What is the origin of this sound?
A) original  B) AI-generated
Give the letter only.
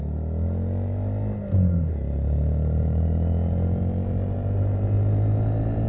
A